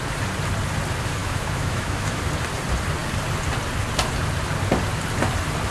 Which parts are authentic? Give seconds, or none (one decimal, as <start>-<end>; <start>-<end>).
0.0-1.2; 2.2-5.7